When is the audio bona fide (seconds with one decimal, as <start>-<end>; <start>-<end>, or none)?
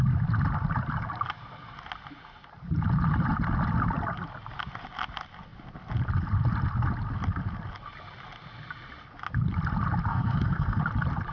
0.0-10.1; 10.8-11.3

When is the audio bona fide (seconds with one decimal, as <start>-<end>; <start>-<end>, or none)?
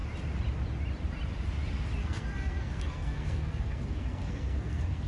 0.0-2.0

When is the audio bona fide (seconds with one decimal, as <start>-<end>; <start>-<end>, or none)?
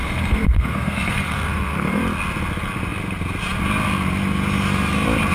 2.0-5.3